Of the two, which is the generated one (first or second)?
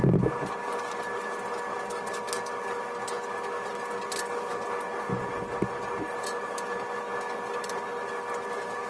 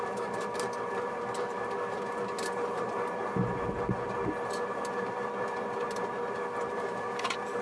second